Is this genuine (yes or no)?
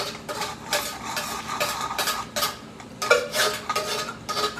yes